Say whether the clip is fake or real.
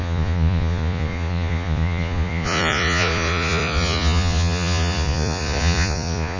fake